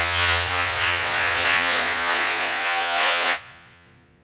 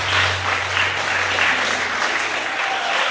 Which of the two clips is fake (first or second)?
first